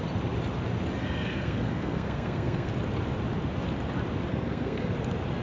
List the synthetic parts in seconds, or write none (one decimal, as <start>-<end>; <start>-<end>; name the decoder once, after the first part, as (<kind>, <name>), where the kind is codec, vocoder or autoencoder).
1.0-2.7 (codec, SNAC); 4.3-4.9